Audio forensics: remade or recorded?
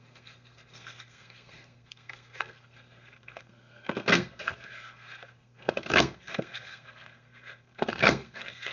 remade